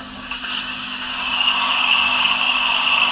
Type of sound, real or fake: fake